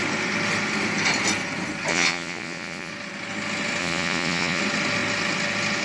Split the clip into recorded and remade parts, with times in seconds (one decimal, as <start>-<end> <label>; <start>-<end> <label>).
0.0-1.9 recorded; 1.9-2.9 remade; 2.9-3.8 recorded; 3.8-4.6 remade; 4.6-5.8 recorded